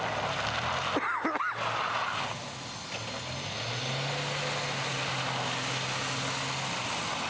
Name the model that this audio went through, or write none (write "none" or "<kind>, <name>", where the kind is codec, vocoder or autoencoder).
none